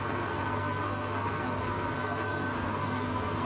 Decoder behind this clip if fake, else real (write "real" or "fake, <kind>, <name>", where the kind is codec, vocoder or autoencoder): fake, codec, SNAC